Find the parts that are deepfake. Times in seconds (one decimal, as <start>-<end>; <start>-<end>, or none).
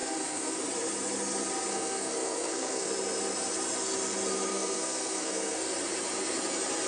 0.0-0.6; 1.7-2.9; 4.5-5.7